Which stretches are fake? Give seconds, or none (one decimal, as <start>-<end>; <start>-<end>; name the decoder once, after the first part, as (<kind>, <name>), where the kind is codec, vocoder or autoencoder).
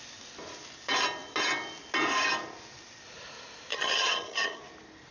3.7-4.6 (vocoder, HiFi-GAN)